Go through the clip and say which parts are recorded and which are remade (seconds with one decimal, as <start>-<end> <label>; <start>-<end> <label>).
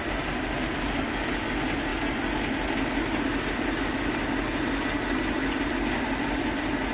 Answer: 0.0-6.9 recorded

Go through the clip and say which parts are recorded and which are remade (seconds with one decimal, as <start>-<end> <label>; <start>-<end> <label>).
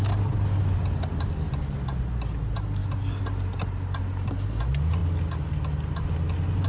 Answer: 0.0-6.7 recorded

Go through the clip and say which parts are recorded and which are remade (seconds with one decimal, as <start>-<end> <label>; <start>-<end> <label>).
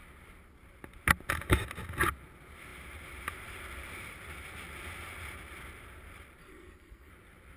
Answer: 0.0-6.4 recorded; 6.4-7.1 remade; 7.1-7.6 recorded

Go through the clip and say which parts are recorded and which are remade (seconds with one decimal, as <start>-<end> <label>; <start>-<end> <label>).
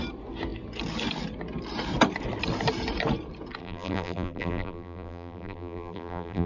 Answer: 0.0-3.6 recorded; 3.6-6.5 remade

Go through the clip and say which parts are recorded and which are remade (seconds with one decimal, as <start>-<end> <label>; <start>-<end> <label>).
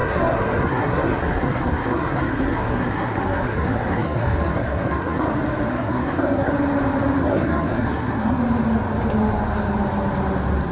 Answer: 0.0-5.3 remade; 5.3-5.7 recorded; 5.7-6.5 remade; 6.5-7.2 recorded; 7.2-8.4 remade; 8.4-10.7 recorded